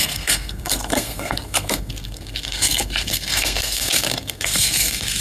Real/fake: fake